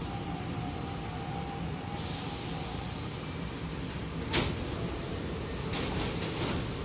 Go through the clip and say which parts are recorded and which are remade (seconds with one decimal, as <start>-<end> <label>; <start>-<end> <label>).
0.0-6.8 recorded